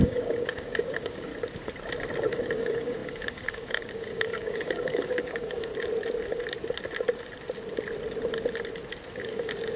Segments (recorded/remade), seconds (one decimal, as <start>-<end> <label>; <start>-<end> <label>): 0.0-1.3 remade; 1.3-2.3 recorded; 2.3-5.7 remade; 5.7-9.1 recorded; 9.1-9.8 remade